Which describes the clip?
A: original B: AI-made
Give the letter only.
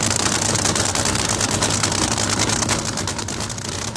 A